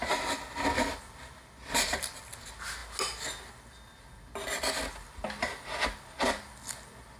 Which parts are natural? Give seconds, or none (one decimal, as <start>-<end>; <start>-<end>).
0.0-7.2